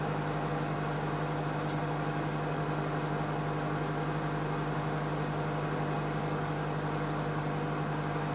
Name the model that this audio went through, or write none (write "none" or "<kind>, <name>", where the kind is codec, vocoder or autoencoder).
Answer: none